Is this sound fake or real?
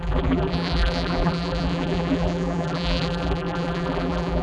fake